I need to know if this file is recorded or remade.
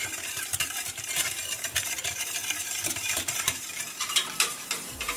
remade